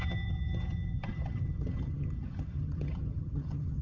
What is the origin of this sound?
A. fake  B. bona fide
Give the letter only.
A